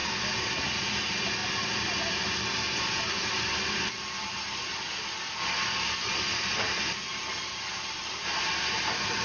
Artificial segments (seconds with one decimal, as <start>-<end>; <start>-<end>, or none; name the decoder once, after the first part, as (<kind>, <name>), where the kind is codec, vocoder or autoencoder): none